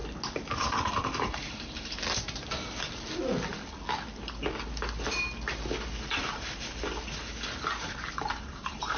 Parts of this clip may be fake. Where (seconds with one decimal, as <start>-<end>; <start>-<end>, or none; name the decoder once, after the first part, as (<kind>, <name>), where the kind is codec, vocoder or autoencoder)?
0.5-3.5 (vocoder, BigVGAN v2); 7.8-9.0